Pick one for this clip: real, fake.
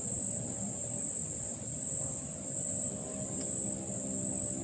real